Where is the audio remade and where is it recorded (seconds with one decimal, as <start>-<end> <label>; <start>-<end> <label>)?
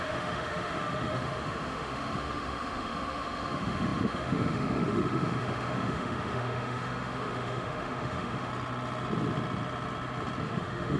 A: 0.0-8.5 remade; 8.5-10.4 recorded; 10.4-11.0 remade